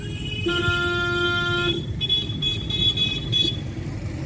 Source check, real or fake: real